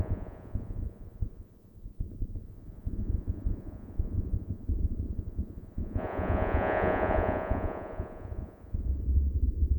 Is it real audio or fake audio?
fake